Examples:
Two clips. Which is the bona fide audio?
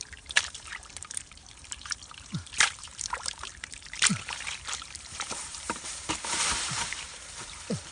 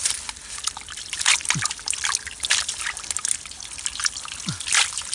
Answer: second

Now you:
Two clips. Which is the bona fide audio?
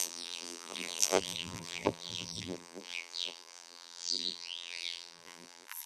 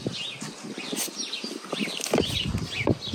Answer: second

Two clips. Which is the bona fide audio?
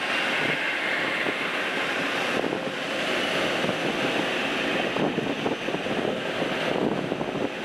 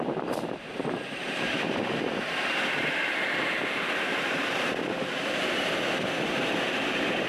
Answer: first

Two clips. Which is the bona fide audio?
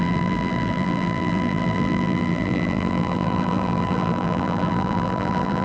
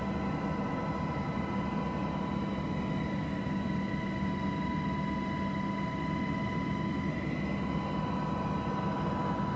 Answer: second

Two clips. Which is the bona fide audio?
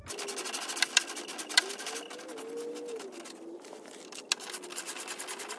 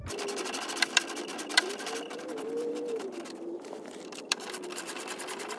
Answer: first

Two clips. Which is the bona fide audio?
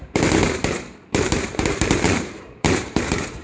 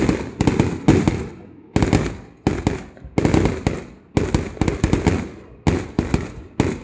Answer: second